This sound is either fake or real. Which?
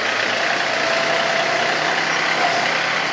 real